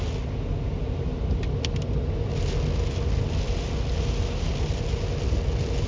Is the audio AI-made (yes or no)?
no